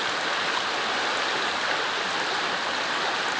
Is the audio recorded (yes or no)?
yes